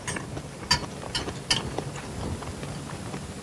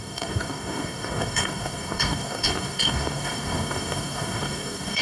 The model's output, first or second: second